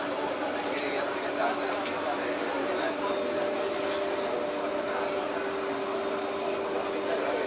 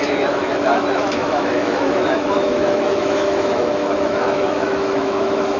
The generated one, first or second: second